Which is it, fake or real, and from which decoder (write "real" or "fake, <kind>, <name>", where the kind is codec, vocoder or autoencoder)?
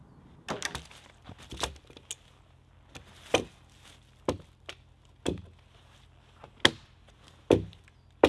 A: real